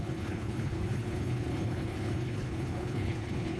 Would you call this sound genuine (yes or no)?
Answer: no